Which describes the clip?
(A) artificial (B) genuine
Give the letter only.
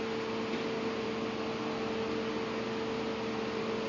B